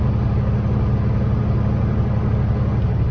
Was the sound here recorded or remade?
recorded